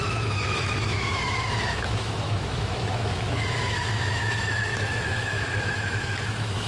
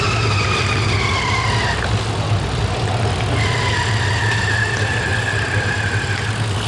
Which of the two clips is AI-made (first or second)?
first